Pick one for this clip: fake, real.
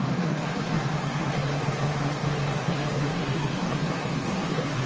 fake